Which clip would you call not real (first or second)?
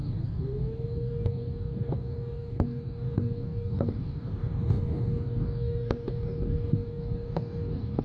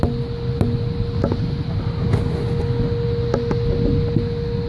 first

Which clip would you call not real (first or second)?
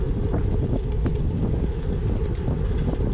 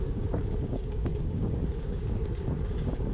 second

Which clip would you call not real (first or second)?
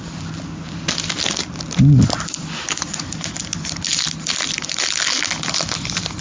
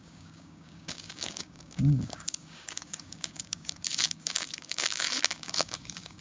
second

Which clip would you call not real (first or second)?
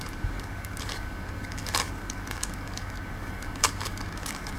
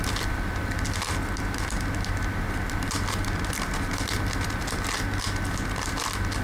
first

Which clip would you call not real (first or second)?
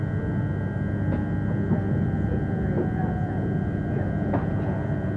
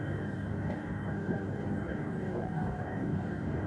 second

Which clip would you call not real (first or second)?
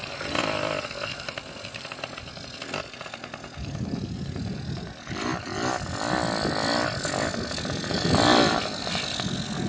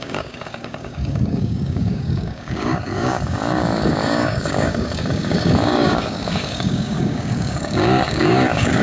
second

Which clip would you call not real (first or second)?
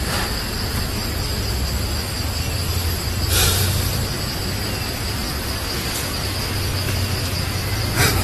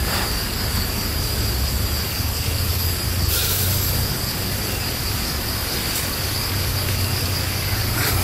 second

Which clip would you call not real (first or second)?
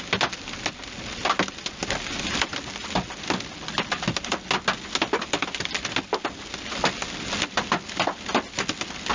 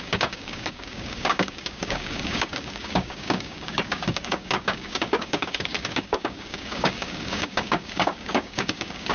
second